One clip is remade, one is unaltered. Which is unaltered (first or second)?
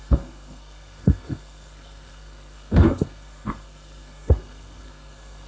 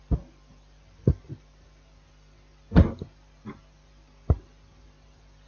second